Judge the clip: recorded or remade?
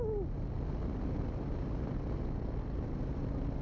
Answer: recorded